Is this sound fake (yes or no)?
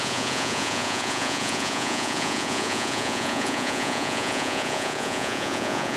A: yes